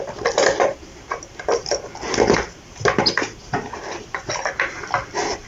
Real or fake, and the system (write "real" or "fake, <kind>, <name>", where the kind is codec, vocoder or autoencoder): real